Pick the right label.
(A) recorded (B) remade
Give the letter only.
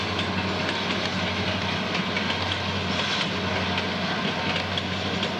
A